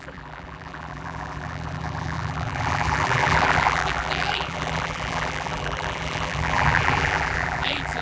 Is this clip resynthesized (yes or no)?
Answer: yes